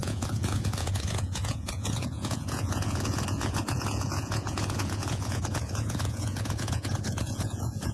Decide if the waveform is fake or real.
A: fake